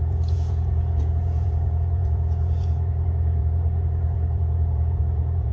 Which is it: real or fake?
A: fake